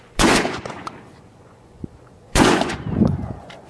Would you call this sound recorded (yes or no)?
no